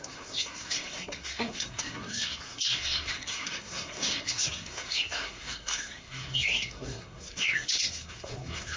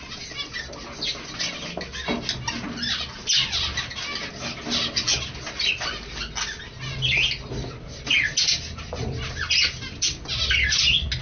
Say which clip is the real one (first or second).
second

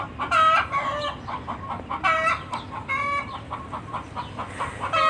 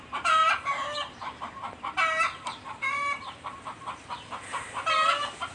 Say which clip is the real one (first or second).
first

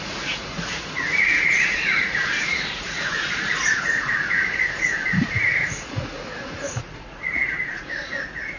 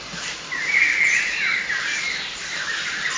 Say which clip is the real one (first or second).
second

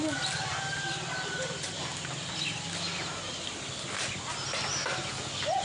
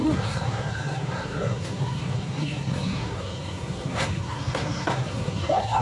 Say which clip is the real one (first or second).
first